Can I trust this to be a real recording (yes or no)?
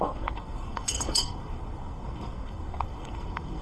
no